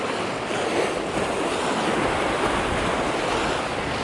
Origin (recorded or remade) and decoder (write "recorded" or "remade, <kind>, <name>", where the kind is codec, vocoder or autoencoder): recorded